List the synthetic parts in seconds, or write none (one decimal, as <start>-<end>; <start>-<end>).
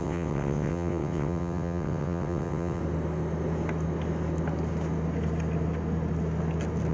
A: 0.0-2.8